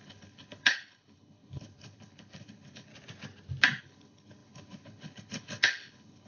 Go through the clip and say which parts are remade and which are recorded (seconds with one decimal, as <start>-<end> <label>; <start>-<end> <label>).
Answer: 0.0-2.9 remade; 2.9-3.8 recorded; 3.8-6.3 remade